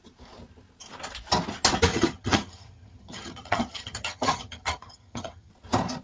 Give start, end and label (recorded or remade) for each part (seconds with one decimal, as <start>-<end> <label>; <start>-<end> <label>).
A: 0.0-1.9 recorded; 1.9-5.5 remade; 5.5-6.0 recorded